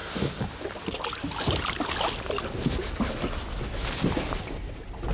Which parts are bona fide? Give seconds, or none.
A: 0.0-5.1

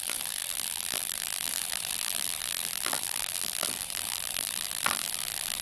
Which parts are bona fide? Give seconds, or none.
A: none

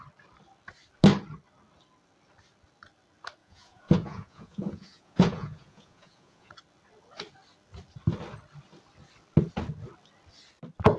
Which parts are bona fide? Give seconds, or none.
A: 0.0-3.4; 6.5-11.0

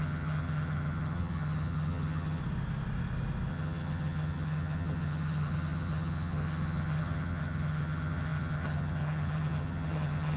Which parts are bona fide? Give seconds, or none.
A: 2.4-3.5